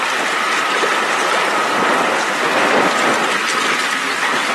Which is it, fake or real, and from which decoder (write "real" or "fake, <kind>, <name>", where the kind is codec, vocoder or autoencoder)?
real